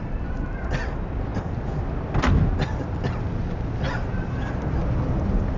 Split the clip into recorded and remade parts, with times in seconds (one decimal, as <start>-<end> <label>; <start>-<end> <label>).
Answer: 0.0-5.6 recorded